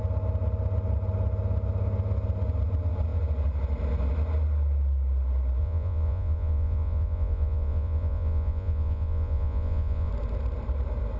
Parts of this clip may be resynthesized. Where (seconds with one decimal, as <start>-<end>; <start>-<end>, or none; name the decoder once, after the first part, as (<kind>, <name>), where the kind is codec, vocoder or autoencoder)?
5.6-10.1 (vocoder, Vocos)